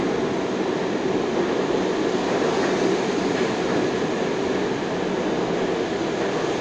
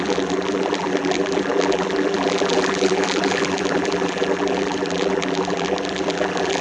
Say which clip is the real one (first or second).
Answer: first